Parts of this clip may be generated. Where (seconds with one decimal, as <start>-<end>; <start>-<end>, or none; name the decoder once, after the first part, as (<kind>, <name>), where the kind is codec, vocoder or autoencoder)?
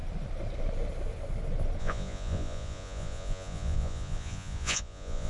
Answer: 1.8-5.3 (vocoder, Vocos)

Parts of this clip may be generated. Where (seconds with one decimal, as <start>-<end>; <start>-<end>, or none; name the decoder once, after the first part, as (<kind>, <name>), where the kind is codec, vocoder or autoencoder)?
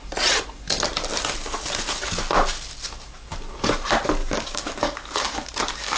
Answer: 4.2-6.0 (codec, DAC)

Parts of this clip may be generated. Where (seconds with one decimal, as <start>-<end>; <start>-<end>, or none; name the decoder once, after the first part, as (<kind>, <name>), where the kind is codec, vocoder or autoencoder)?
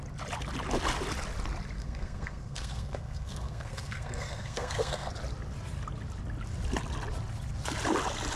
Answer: 1.8-5.1 (codec, SNAC)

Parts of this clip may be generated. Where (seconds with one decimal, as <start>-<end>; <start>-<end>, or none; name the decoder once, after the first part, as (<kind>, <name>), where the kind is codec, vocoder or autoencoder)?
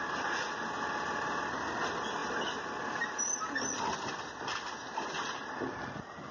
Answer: none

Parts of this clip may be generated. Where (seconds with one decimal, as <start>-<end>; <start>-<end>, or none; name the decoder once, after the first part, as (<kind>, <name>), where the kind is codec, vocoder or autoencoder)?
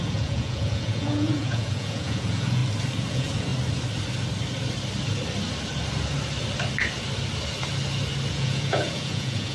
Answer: 0.0-2.6 (vocoder, Vocos); 3.1-3.5; 8.3-9.5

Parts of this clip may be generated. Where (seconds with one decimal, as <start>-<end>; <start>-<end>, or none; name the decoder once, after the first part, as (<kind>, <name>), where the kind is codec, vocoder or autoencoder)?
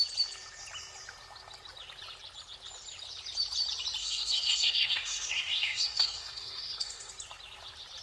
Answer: 4.0-7.1 (codec, SNAC)